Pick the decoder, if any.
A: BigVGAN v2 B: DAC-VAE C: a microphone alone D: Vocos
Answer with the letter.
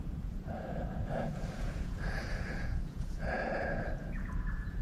D